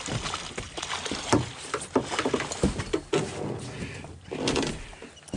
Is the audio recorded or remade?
recorded